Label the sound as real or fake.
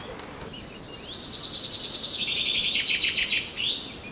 real